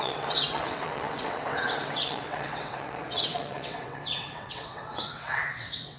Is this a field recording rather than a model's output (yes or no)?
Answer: no